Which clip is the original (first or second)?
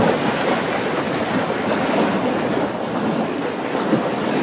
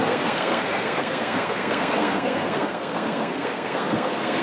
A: first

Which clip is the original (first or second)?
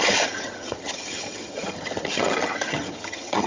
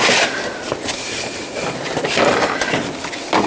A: second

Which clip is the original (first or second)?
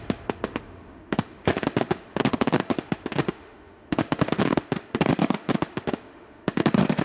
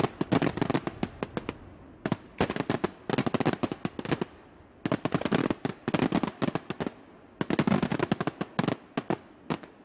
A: second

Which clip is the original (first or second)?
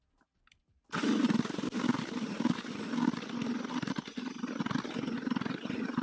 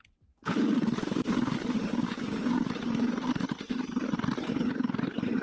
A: first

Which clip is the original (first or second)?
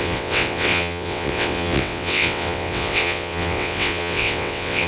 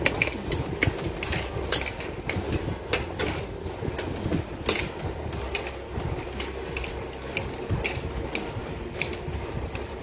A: second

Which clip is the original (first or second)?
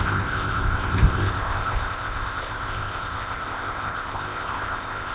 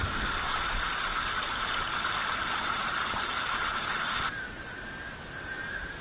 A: second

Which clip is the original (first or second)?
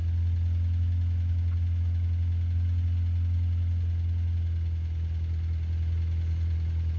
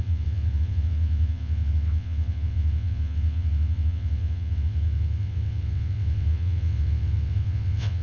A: first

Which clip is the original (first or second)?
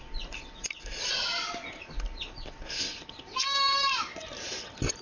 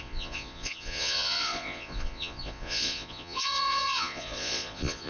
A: first